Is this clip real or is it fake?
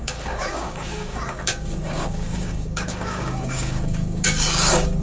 fake